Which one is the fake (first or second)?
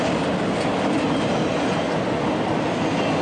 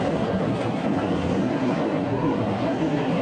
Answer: second